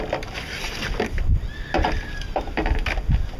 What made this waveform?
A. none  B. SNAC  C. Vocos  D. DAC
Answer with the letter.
A